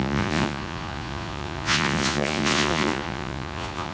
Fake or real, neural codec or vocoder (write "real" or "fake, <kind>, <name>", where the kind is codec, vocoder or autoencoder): fake, vocoder, Vocos